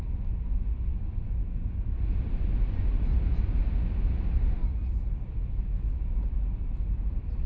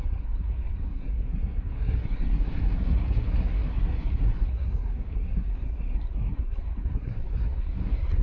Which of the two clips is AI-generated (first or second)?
second